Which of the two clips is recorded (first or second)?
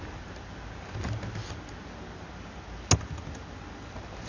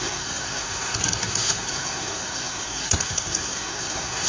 first